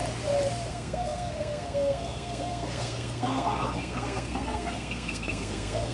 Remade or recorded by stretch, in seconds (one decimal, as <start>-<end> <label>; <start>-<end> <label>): 0.0-0.7 recorded; 0.7-5.9 remade